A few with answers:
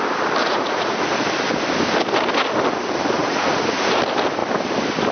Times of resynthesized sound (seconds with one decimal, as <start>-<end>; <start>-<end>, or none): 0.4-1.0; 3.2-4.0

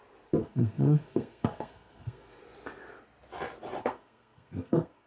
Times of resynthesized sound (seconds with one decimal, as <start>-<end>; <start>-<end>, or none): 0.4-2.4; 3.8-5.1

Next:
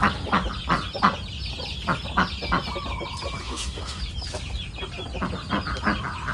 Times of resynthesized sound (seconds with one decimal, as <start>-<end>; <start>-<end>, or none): 3.4-4.0

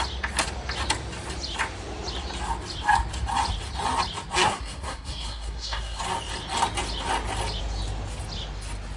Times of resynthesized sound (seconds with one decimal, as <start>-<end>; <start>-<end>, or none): 4.4-6.0

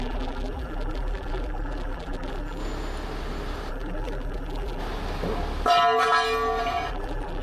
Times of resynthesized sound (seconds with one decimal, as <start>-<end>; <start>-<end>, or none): 0.0-2.6; 3.7-4.8; 6.9-7.4

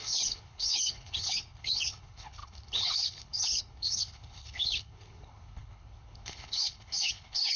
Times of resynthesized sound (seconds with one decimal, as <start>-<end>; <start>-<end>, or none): 0.0-7.6

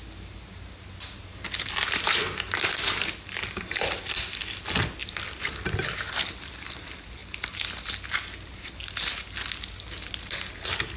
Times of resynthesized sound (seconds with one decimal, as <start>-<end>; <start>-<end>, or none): none

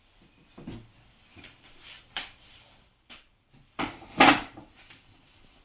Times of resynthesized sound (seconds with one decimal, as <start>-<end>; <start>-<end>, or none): 1.3-4.3